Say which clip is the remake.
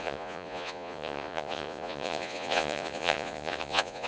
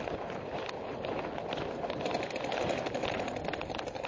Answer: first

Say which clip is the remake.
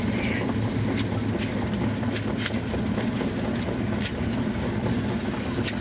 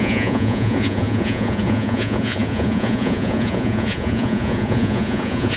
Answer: second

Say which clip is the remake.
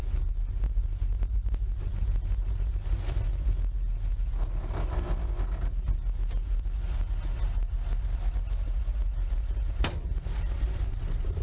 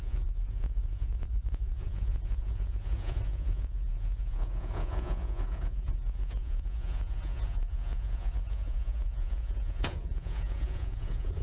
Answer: second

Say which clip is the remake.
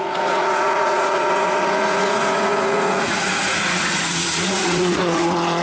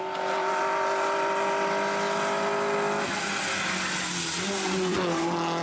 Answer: first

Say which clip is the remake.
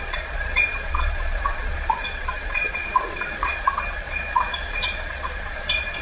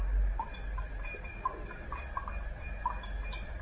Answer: first